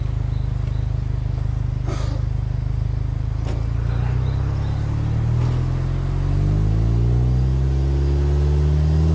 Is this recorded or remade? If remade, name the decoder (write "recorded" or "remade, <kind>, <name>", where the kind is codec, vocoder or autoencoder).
recorded